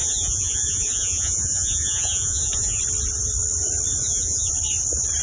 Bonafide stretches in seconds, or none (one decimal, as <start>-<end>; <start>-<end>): 2.8-4.0; 4.5-5.2